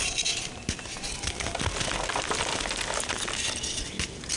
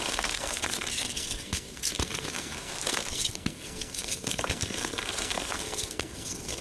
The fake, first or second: second